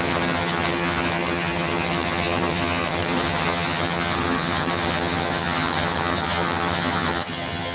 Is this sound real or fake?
fake